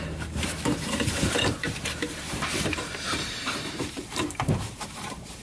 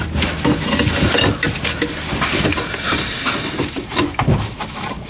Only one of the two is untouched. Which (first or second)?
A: second